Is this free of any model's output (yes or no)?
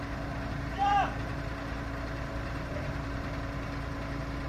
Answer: yes